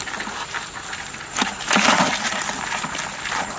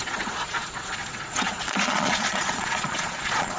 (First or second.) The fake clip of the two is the second